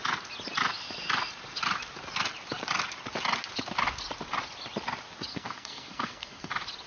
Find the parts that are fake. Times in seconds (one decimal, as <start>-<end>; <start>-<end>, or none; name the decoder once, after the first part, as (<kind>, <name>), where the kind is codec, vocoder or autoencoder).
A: 5.3-6.5 (codec, SNAC)